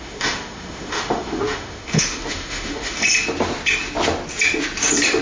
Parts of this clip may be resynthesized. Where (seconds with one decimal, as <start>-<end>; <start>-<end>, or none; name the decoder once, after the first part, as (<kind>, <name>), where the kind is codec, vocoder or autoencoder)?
0.0-3.0 (autoencoder, DAC-VAE)